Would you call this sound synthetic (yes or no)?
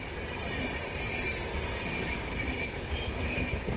no